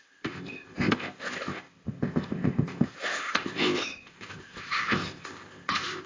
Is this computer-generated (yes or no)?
yes